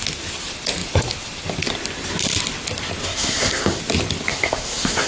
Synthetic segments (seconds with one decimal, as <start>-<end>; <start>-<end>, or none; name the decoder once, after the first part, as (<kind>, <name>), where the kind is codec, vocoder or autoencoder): 3.0-3.8 (codec, SNAC); 4.3-5.1